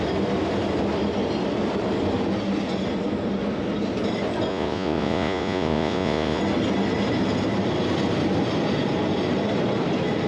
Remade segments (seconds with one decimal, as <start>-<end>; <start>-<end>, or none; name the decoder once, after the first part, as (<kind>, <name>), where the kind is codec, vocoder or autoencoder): 4.5-6.4 (vocoder, Vocos)